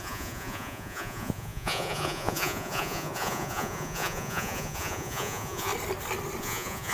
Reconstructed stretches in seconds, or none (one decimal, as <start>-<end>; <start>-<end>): 0.0-5.7; 6.4-6.9